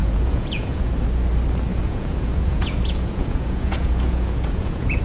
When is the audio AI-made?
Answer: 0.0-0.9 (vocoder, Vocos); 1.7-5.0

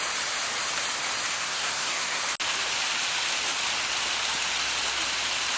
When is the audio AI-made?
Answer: 1.3-2.2 (codec, SNAC)